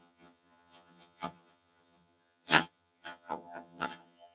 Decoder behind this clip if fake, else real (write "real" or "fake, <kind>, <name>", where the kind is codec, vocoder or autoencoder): fake, vocoder, HiFi-GAN